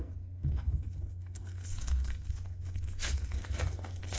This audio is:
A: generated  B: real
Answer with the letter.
A